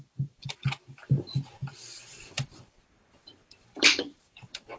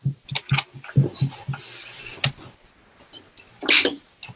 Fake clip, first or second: first